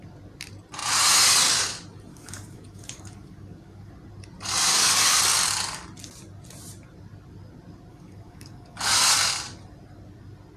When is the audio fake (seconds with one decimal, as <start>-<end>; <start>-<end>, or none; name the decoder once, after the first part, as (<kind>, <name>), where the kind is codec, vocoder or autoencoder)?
2.1-3.9 (codec, DAC); 4.7-5.2; 7.9-9.1